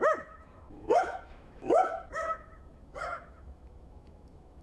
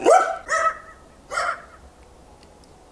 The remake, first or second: first